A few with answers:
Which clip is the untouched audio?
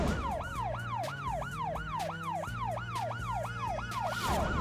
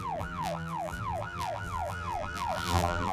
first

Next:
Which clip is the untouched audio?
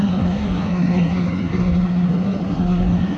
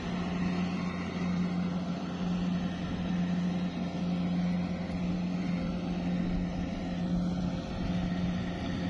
second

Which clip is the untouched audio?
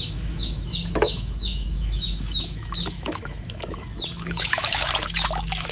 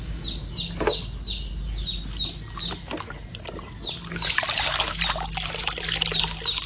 second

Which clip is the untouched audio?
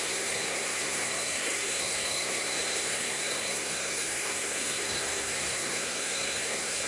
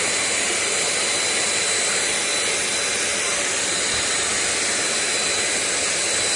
second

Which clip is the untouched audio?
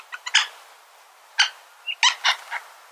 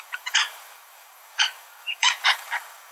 first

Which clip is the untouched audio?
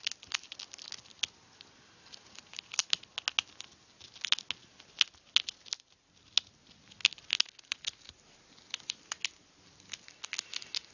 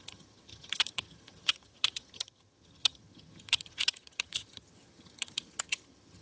first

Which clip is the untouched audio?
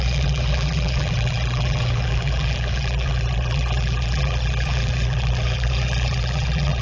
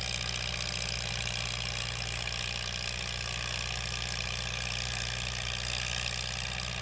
second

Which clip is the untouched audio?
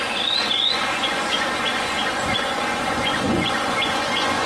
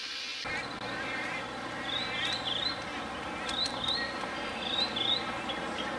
second